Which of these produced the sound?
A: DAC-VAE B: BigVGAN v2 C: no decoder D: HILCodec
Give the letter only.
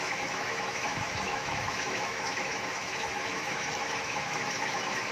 A